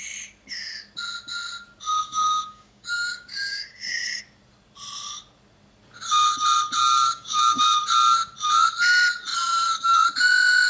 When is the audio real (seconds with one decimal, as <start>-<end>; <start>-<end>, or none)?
0.0-1.9; 4.2-6.8; 7.6-10.7

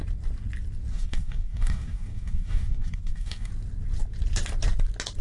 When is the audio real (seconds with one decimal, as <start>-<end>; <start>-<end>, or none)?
0.0-0.9; 3.5-5.2

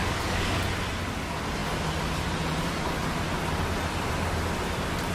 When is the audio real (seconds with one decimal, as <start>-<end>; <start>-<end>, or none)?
0.6-5.1

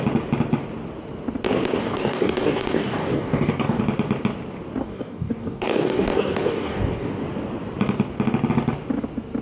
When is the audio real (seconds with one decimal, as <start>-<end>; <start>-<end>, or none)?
0.0-1.8; 3.8-4.8; 7.2-9.4

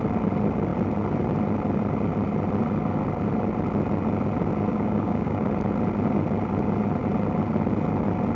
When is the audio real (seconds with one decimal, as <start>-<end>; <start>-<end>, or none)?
0.0-4.7; 5.5-8.3

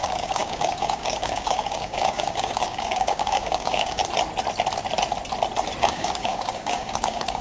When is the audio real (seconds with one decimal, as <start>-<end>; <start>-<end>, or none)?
4.0-5.8